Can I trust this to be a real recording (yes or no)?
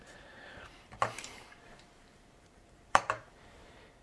no